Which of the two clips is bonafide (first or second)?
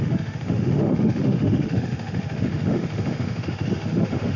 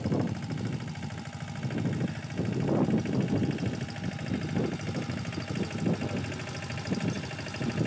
second